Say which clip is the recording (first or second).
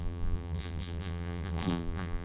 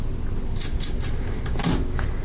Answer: second